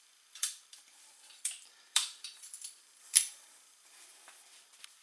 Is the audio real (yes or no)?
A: no